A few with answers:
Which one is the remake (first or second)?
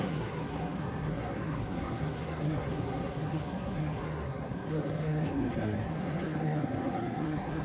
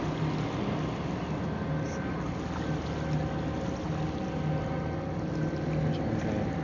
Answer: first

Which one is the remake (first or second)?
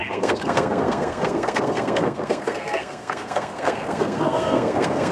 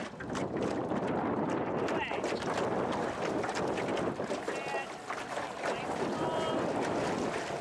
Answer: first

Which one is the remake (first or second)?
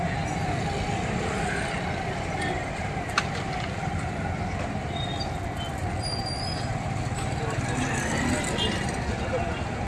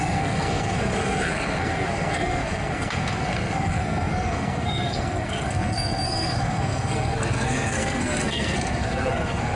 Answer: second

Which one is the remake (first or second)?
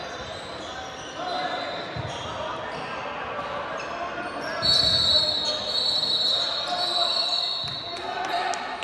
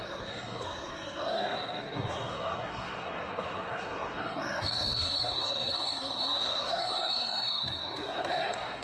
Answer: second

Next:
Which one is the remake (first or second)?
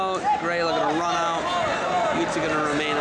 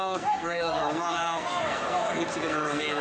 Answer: second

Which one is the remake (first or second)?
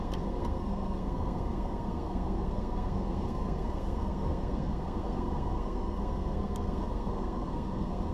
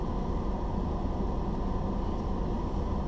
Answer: first